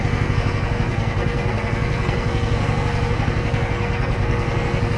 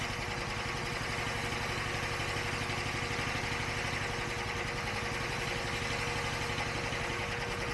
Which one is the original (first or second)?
second